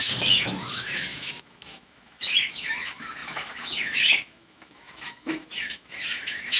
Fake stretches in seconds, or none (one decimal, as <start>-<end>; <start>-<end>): 0.0-6.6